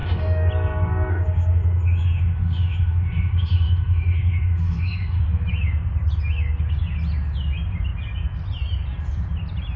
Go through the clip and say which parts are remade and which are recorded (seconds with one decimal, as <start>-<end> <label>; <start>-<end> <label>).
0.0-0.5 remade; 0.5-1.1 recorded; 1.1-5.2 remade; 5.2-9.8 recorded